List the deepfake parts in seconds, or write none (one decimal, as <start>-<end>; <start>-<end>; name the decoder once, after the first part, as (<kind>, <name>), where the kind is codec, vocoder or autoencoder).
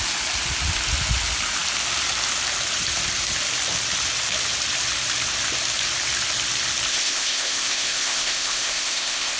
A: 6.9-9.4 (codec, ZipCodec)